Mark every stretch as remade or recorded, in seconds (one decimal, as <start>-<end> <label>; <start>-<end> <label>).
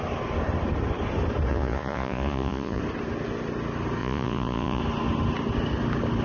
0.0-1.5 recorded; 1.5-2.8 remade; 2.8-4.0 recorded; 4.0-4.8 remade; 4.8-6.2 recorded